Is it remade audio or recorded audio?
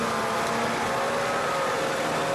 recorded